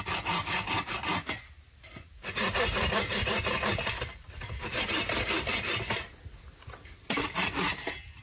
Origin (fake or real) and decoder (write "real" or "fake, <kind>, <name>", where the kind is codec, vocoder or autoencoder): real